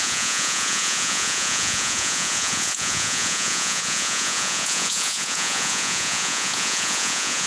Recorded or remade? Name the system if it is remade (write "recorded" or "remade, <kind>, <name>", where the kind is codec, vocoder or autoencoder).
remade, vocoder, Vocos